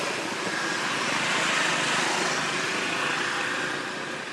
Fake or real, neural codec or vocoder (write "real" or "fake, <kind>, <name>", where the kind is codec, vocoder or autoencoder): real